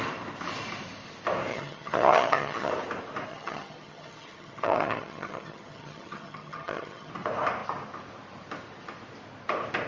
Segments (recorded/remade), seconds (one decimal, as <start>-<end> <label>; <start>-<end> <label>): 0.0-1.5 recorded; 1.5-2.7 remade; 2.7-3.3 recorded; 3.3-7.1 remade; 7.1-9.9 recorded